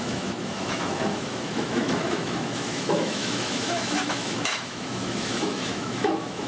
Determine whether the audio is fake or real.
fake